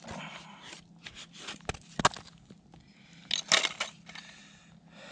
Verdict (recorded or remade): recorded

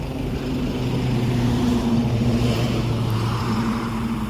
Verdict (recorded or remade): remade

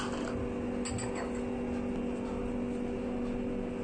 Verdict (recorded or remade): recorded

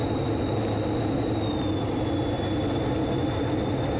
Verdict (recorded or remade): recorded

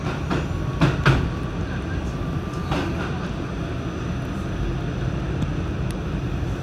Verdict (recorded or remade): recorded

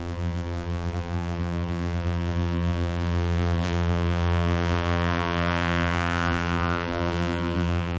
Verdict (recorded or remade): remade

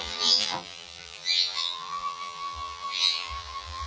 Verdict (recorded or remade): remade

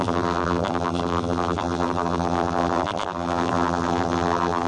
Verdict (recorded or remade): remade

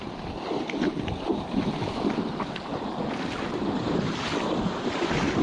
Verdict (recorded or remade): remade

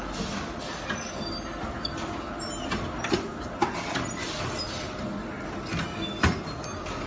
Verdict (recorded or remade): recorded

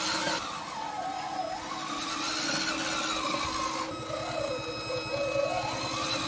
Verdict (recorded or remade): recorded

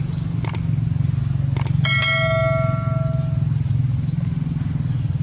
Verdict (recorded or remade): recorded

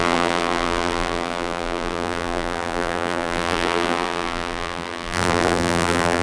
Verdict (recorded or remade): remade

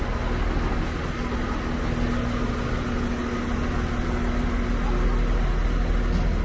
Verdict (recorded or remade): recorded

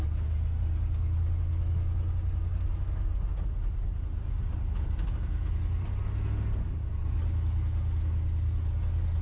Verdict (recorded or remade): recorded